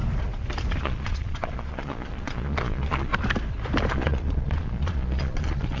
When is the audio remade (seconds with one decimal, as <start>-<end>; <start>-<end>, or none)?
0.8-3.1; 3.9-5.8